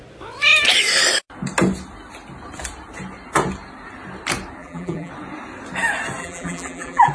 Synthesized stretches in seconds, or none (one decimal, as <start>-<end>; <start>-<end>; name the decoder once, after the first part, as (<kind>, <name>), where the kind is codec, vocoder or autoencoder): 4.6-5.1 (vocoder, BigVGAN v2); 6.2-7.1